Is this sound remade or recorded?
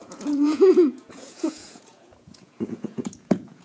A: remade